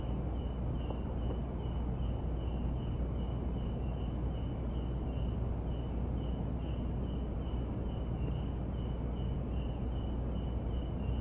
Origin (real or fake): real